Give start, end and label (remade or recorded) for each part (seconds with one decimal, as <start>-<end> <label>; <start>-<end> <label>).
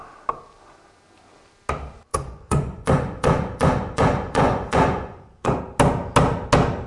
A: 0.0-2.1 recorded; 2.1-5.6 remade; 5.6-6.9 recorded